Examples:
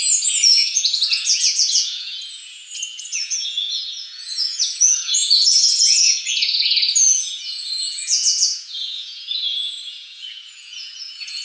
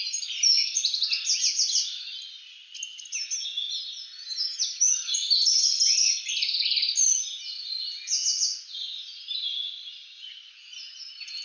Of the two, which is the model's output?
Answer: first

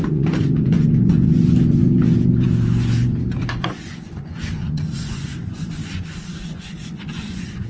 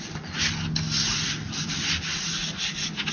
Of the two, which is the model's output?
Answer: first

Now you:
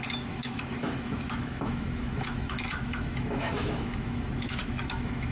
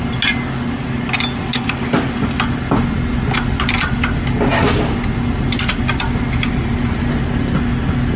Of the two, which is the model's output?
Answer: first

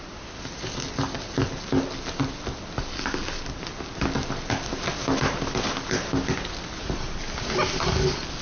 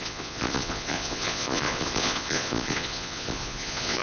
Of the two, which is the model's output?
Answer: second